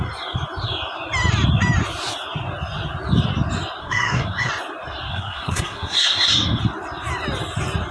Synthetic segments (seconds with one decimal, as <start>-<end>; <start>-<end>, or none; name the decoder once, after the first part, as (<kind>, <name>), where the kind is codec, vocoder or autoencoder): 3.8-4.5 (codec, SNAC); 5.1-6.6